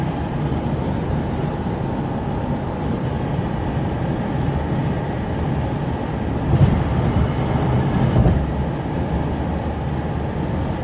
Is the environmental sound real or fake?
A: real